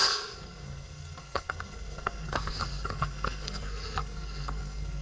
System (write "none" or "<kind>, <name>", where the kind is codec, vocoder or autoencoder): codec, SNAC